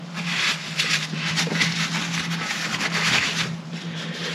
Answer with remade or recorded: recorded